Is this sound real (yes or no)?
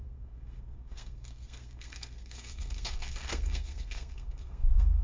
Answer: no